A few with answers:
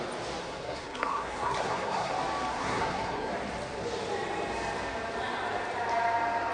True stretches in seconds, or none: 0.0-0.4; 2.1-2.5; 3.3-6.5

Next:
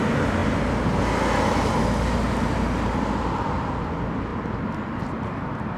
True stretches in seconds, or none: 0.0-5.8

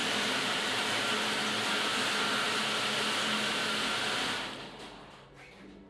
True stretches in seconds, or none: 0.8-5.9

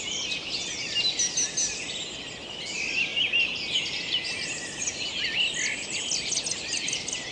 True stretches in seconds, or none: 0.0-7.3

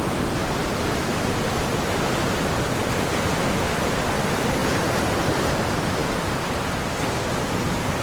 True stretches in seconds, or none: 0.0-8.0